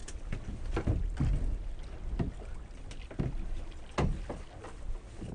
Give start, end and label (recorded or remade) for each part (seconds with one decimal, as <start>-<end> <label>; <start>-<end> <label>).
0.0-5.3 recorded